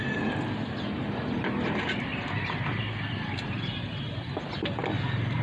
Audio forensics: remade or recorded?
recorded